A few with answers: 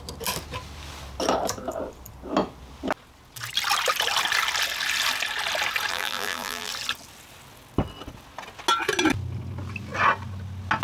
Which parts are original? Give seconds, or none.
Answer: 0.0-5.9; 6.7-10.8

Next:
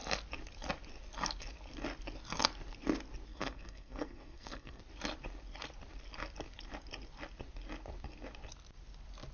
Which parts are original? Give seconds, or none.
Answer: 0.0-3.3; 4.8-9.3

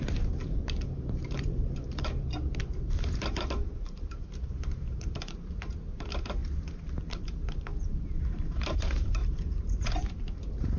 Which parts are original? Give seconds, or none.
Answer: 9.2-10.4

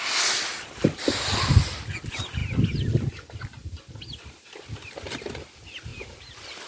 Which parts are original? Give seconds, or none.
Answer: 0.0-6.7

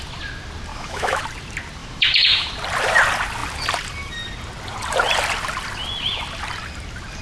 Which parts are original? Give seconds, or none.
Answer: 0.0-0.7; 1.2-1.8; 2.5-7.2

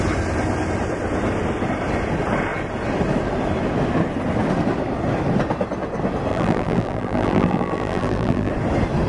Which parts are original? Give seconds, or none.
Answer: 0.0-6.3; 8.5-9.1

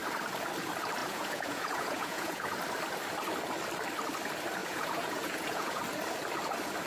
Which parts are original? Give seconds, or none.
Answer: 0.0-1.0; 2.6-4.6; 5.8-6.9